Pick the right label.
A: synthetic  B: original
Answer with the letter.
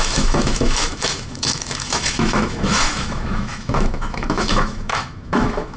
A